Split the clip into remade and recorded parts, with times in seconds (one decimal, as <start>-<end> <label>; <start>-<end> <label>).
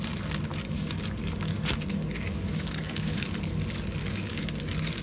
0.0-0.5 recorded; 0.5-3.5 remade; 3.5-4.0 recorded; 4.0-4.6 remade; 4.6-5.0 recorded